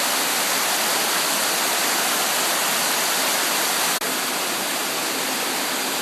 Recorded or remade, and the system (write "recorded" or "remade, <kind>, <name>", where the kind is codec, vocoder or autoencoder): recorded